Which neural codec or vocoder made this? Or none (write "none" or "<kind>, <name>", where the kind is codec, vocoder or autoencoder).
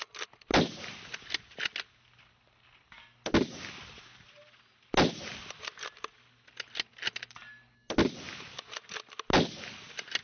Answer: none